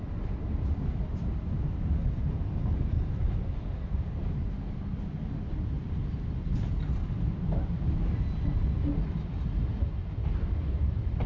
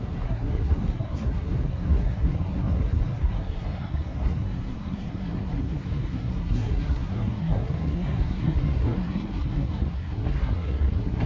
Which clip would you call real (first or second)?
first